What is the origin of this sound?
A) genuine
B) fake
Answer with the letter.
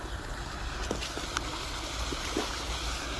A